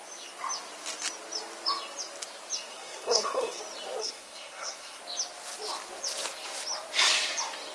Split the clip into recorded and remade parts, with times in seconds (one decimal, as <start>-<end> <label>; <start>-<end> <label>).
0.0-2.7 recorded; 2.7-3.6 remade; 3.6-4.0 recorded; 4.0-5.0 remade; 5.0-7.7 recorded